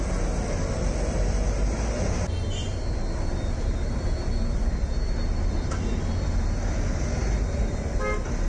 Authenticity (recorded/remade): recorded